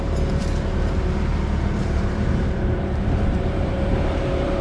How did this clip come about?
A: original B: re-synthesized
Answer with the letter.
B